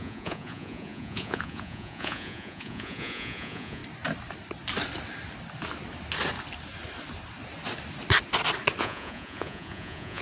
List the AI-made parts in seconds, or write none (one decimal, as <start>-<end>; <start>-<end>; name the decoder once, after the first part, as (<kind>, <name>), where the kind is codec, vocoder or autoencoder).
0.0-3.8 (vocoder, Vocos); 8.8-10.2